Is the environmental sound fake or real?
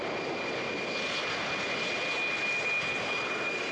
real